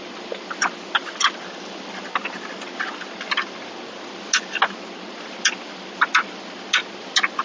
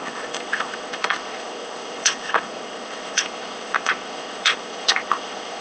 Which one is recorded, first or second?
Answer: first